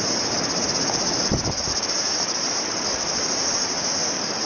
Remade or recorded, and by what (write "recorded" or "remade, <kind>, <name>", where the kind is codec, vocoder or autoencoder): remade, vocoder, BigVGAN v2